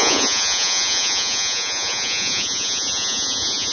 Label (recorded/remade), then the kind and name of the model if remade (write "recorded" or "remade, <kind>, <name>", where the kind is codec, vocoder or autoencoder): remade, vocoder, Vocos